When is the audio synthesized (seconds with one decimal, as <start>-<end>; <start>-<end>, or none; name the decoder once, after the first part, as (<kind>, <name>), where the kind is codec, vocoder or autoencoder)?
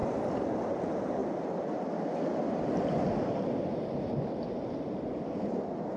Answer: none